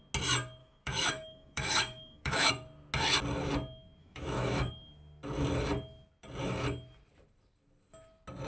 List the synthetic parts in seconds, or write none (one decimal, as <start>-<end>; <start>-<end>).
0.6-2.5; 4.0-4.7